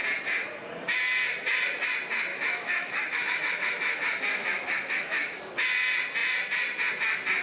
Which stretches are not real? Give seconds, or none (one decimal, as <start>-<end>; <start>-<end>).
2.3-5.4